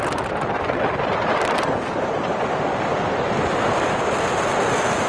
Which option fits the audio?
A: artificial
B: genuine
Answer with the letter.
B